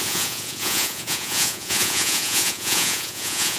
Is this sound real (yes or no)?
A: no